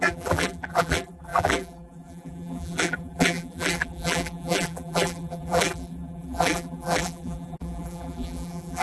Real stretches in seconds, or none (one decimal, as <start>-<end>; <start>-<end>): none